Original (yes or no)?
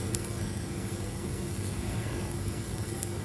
no